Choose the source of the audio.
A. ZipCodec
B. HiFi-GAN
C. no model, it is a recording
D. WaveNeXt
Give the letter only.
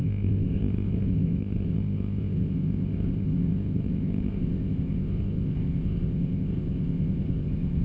A